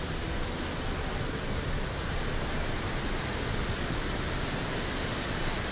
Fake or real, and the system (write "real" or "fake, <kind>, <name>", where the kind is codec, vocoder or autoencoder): real